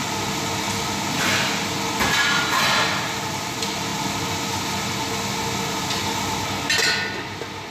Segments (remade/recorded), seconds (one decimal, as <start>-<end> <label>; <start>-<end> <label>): 0.0-7.7 recorded